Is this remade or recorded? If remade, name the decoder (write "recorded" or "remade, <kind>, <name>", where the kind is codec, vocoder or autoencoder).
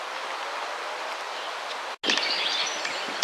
recorded